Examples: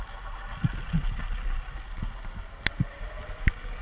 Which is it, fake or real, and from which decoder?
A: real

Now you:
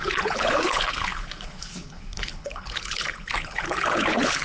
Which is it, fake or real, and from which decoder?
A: fake, codec, HILCodec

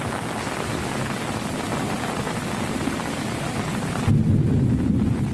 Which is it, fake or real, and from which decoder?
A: real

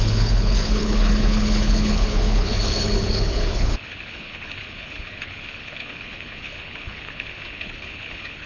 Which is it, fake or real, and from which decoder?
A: fake, codec, HILCodec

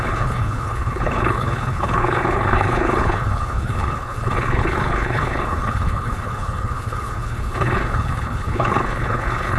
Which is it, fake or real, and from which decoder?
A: fake, codec, HILCodec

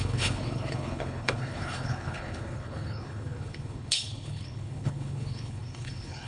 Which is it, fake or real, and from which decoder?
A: fake, codec, HILCodec